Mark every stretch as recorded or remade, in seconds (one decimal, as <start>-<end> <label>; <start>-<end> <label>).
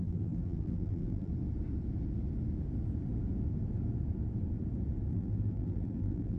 0.0-1.3 remade; 1.3-5.1 recorded; 5.1-6.4 remade